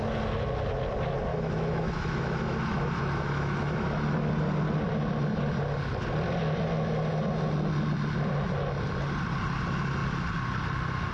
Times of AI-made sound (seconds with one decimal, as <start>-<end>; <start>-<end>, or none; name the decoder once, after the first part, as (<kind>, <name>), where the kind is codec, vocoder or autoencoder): 1.3-4.3 (autoencoder, DAC-VAE)